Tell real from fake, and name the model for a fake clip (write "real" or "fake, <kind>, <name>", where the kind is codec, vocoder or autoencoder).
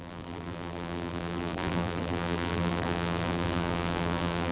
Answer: fake, vocoder, BigVGAN v2